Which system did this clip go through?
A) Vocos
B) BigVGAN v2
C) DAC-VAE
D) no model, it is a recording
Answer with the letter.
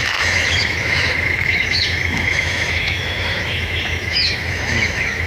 C